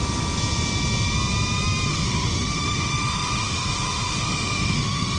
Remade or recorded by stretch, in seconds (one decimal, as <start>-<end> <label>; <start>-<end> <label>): 0.0-1.9 recorded; 1.9-5.2 remade